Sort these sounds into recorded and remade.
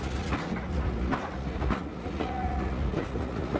remade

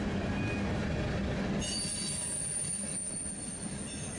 recorded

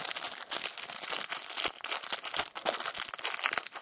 recorded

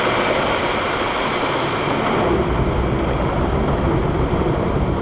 recorded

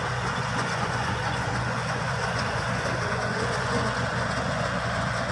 remade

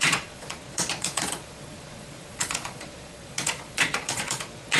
remade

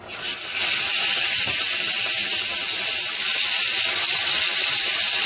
recorded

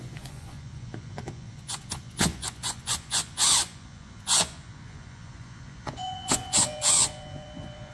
remade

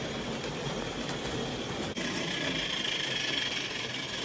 recorded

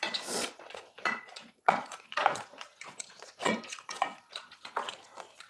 remade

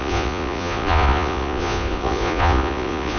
remade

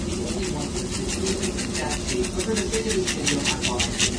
recorded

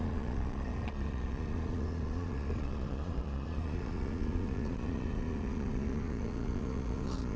remade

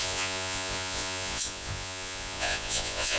remade